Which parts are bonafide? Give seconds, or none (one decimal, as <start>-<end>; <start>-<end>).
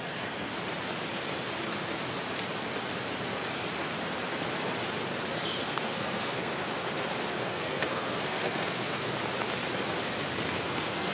0.5-5.6; 6.5-7.3; 9.1-10.6